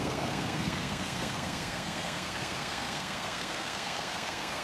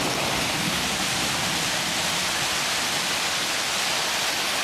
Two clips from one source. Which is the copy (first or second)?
first